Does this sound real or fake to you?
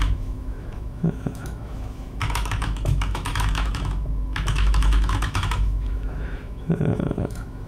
fake